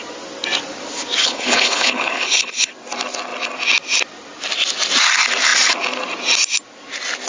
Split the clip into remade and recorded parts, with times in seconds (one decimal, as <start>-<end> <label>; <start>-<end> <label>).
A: 0.0-1.2 recorded; 1.2-2.7 remade; 2.7-7.3 recorded